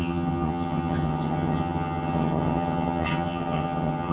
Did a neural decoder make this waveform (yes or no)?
yes